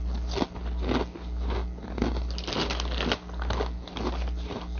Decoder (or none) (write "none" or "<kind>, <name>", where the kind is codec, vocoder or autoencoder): none